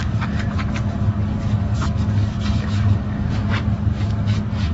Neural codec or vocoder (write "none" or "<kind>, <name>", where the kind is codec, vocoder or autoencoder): codec, DAC